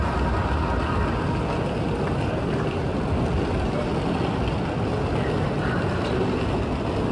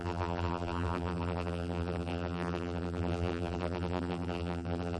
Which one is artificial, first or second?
second